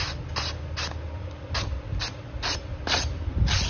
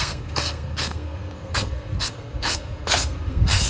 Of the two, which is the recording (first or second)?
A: first